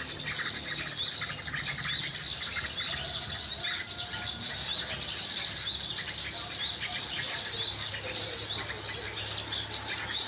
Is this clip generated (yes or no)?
no